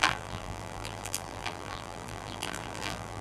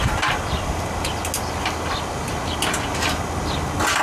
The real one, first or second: second